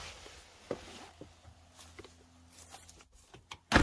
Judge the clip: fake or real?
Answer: real